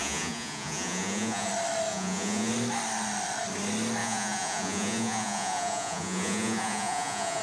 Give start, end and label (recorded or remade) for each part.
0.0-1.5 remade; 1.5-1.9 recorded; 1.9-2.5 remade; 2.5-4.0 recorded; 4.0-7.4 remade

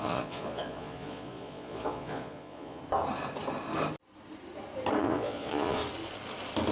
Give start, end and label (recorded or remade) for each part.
0.0-2.8 remade; 2.8-5.0 recorded; 5.0-5.8 remade; 5.8-6.7 recorded